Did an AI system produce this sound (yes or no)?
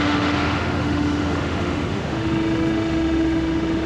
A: yes